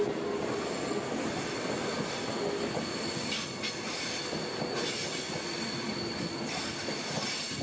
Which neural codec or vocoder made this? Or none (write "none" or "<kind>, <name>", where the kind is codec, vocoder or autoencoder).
none